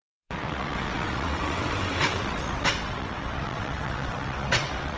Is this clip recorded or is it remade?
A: remade